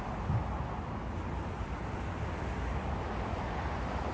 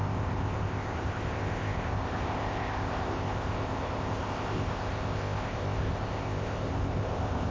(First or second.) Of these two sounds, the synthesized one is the second